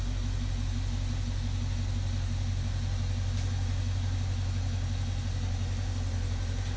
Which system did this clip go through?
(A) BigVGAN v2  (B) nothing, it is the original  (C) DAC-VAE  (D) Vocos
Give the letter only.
B